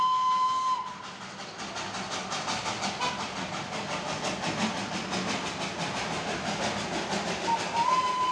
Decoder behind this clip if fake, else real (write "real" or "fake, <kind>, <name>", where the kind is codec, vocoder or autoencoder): real